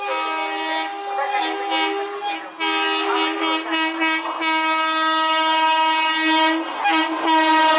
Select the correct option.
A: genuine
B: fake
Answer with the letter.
A